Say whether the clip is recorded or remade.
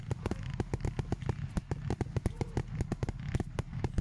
recorded